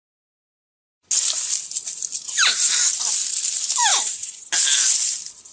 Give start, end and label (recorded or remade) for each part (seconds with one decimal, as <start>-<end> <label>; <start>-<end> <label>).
0.0-3.9 recorded; 3.9-4.5 remade; 4.5-5.5 recorded